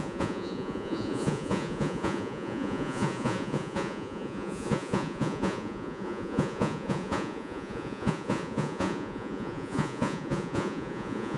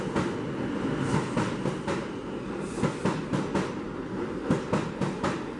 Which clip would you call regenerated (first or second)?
first